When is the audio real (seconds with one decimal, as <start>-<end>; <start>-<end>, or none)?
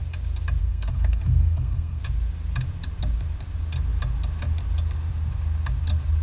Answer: 0.0-0.6; 2.0-6.2